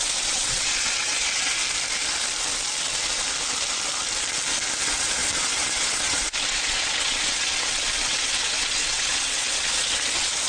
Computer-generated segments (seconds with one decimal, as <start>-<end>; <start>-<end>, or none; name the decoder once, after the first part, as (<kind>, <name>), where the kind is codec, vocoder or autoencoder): 0.0-1.6 (vocoder, WaveNeXt); 4.8-10.5